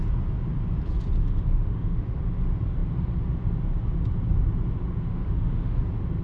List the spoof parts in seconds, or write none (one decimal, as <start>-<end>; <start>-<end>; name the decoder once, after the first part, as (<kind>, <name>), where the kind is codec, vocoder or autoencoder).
1.2-2.2 (autoencoder, DAC-VAE); 5.1-5.8

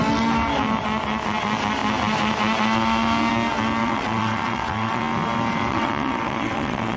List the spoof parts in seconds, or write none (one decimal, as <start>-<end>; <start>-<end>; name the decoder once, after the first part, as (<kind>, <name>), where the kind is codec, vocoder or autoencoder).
3.8-5.0 (vocoder, WaveNeXt); 5.7-7.0

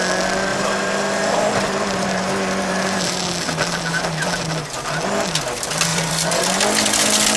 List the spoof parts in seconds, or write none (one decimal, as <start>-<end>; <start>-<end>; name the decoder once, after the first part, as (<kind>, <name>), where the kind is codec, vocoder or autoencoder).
0.5-4.9 (vocoder, BigVGAN v2); 5.9-6.6

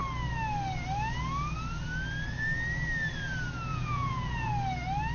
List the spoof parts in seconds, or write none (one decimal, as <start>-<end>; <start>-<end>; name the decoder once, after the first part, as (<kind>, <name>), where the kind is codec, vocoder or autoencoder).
3.7-4.5 (vocoder, Vocos)